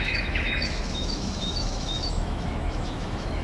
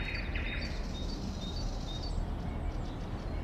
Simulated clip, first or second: first